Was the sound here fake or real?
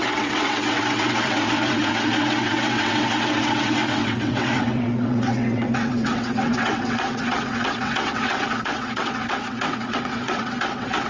fake